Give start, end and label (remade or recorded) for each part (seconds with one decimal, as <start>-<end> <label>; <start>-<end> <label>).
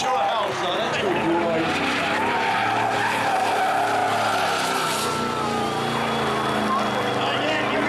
0.0-2.6 recorded; 2.6-3.5 remade; 3.5-7.9 recorded